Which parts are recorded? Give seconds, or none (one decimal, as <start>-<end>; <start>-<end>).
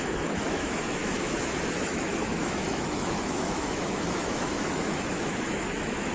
none